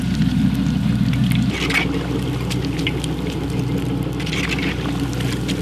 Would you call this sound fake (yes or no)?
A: no